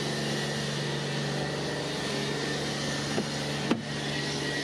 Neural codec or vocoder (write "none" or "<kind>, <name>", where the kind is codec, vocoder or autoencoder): none